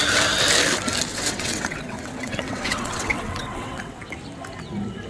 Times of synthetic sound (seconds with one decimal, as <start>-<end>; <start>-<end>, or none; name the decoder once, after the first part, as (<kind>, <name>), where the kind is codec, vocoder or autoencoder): 1.1-4.0 (vocoder, WaveNeXt)